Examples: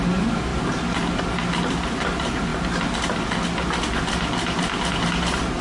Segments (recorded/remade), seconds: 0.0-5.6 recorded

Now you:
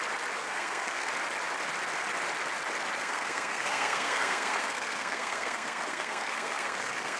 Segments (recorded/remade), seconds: 0.0-0.4 recorded; 0.4-1.1 remade; 1.1-3.0 recorded; 3.0-7.2 remade

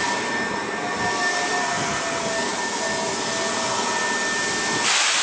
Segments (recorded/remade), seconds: 0.0-5.2 recorded

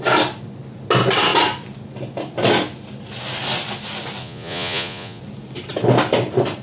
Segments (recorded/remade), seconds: 0.0-4.2 recorded; 4.2-5.2 remade; 5.2-6.6 recorded

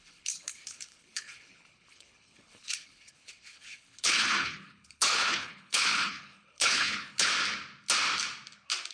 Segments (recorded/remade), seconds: 0.0-7.3 remade; 7.3-8.9 recorded